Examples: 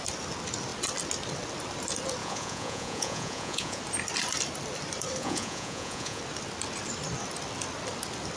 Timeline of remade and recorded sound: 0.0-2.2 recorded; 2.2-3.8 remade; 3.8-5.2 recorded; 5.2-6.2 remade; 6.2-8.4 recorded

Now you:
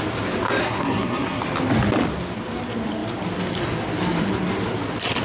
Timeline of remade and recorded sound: 0.0-0.6 recorded; 0.6-1.4 remade; 1.4-5.2 recorded